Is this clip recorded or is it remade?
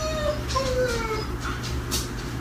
recorded